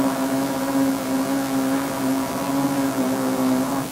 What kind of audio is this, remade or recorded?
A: remade